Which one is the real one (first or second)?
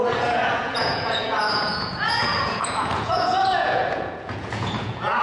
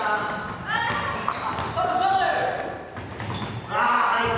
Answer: second